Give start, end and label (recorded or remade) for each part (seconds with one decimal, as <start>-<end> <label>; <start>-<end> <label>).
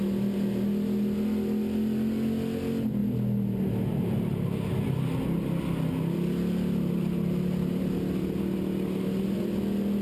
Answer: 0.0-10.0 recorded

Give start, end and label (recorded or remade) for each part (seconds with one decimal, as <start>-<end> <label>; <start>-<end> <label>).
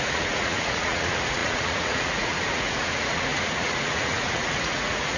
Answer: 0.0-5.2 remade